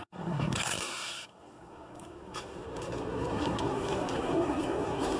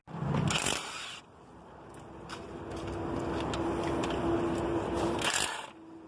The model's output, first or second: first